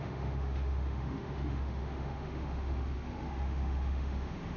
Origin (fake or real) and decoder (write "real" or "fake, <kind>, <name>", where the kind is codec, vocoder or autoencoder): fake, autoencoder, DAC-VAE